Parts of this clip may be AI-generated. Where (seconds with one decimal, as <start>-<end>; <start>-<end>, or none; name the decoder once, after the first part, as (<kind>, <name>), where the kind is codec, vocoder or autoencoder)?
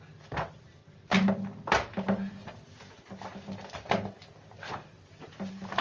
none